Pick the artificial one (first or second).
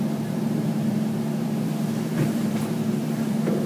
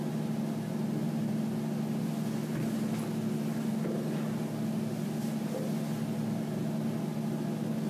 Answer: first